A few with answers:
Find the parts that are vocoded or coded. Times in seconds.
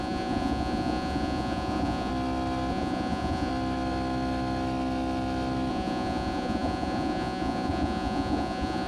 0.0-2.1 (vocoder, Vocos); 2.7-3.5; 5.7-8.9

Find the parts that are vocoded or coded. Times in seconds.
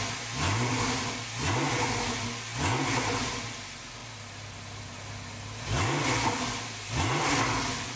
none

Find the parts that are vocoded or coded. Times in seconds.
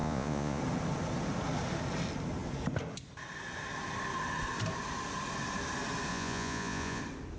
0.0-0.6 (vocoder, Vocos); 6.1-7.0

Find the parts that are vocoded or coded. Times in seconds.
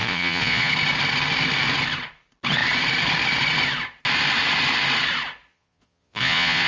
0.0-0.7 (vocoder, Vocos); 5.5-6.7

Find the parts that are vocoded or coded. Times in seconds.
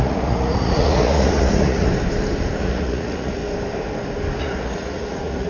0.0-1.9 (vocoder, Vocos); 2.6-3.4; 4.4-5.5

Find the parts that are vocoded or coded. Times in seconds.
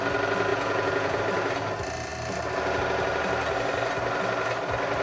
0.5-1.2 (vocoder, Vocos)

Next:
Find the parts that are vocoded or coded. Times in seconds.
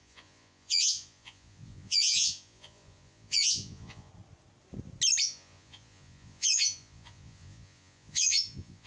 0.0-4.1 (vocoder, Vocos); 5.2-8.9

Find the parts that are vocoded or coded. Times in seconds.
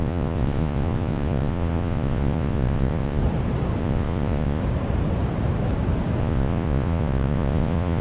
0.0-3.2 (vocoder, Vocos); 3.8-4.6; 6.2-8.0